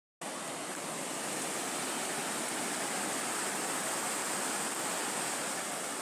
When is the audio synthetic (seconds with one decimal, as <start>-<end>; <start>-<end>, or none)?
none